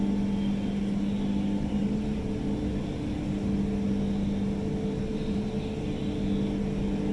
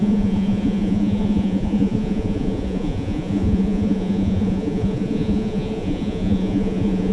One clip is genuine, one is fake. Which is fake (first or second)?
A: second